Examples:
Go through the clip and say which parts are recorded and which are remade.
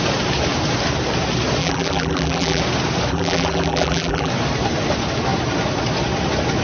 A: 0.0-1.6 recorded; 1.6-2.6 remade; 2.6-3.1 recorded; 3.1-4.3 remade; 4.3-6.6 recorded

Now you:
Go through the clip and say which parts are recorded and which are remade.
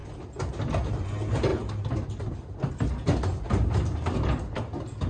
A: 0.0-5.1 recorded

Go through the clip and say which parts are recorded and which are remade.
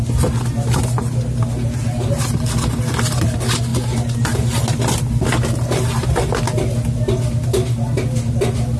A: 0.0-8.8 recorded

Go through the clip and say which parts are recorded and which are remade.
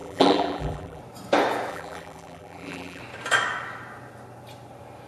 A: 0.0-1.0 remade; 1.0-1.7 recorded; 1.7-3.0 remade; 3.0-5.1 recorded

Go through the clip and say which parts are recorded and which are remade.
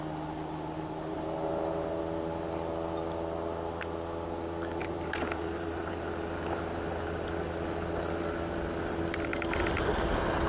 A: 0.0-1.1 recorded; 1.1-2.0 remade; 2.0-4.8 recorded; 4.8-5.9 remade; 5.9-10.5 recorded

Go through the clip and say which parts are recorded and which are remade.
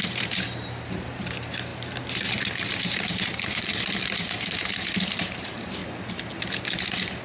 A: 0.0-5.8 remade; 5.8-7.2 recorded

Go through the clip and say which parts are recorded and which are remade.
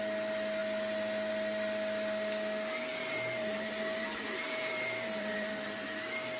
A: 0.0-3.0 recorded; 3.0-5.8 remade; 5.8-6.4 recorded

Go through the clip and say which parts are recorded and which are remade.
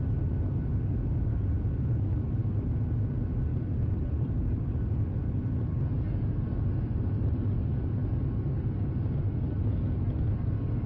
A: 0.0-3.5 recorded; 3.5-5.2 remade; 5.2-10.9 recorded